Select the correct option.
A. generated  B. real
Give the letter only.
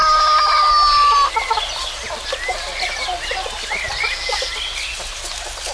B